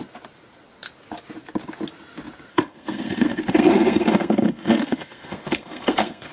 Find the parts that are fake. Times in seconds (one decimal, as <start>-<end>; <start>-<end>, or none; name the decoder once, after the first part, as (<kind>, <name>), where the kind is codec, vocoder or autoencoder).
2.5-6.3 (codec, SNAC)